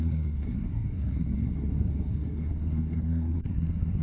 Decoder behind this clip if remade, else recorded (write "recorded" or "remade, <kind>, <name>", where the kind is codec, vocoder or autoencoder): remade, codec, SNAC